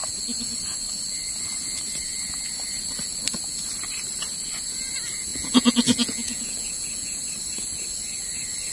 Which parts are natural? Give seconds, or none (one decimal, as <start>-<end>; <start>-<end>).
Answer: 0.0-5.3; 7.2-8.7